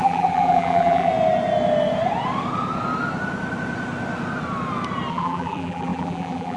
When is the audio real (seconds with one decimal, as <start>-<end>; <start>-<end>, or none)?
1.1-5.1